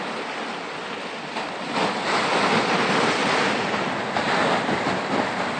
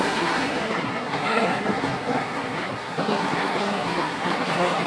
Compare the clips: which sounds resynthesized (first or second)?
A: second